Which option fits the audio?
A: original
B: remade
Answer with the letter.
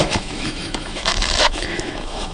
B